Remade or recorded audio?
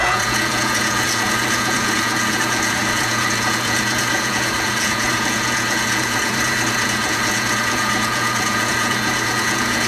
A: remade